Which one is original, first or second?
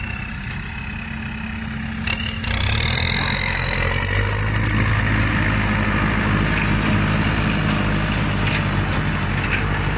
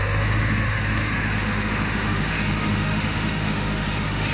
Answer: first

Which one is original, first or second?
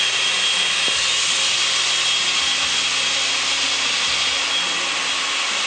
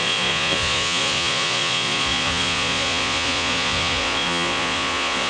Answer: first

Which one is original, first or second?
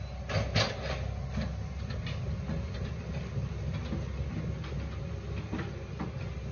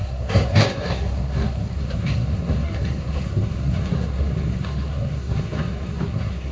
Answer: first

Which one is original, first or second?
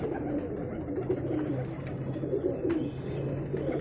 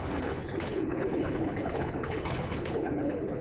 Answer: first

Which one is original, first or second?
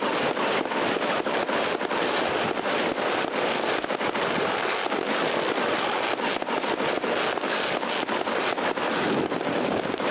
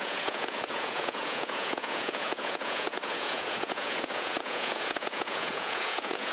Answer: first